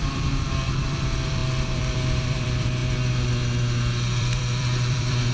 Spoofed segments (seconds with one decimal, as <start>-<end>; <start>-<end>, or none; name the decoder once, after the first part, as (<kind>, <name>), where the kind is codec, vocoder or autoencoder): 0.0-2.8 (vocoder, BigVGAN v2); 3.9-5.3